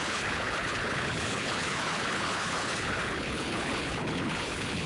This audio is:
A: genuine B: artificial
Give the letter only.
B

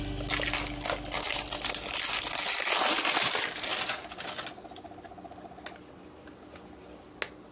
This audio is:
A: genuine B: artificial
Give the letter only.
A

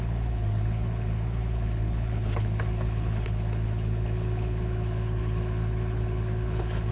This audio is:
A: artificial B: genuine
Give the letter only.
A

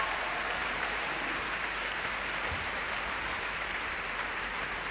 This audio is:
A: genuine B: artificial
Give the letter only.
B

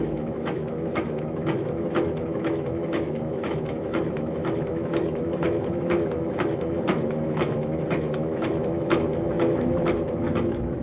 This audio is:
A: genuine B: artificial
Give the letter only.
B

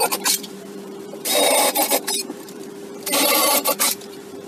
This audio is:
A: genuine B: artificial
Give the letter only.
B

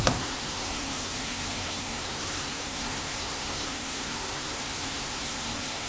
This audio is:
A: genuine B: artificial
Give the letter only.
B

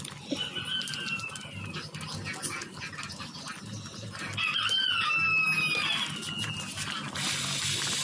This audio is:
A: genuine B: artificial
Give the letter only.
A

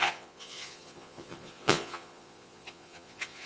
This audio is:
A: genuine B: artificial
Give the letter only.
B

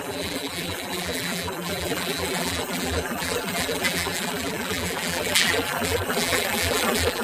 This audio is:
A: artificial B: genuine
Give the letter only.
A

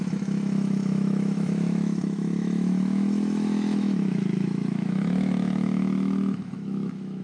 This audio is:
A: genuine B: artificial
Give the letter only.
B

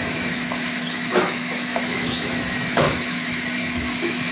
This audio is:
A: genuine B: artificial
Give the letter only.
B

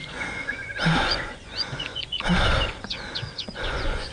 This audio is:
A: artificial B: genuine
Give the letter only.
A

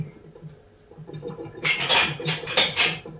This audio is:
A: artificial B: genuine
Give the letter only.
A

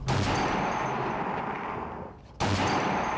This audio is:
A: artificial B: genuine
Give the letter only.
B